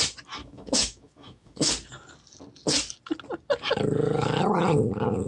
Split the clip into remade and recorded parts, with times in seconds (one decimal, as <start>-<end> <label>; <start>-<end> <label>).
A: 0.0-0.4 recorded; 0.4-1.7 remade; 1.7-5.3 recorded